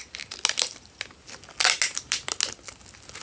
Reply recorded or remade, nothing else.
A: recorded